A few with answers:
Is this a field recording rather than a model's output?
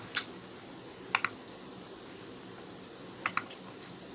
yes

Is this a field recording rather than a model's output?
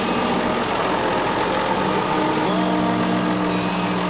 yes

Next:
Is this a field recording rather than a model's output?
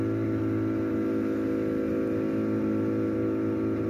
yes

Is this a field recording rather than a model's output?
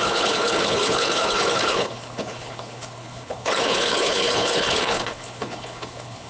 no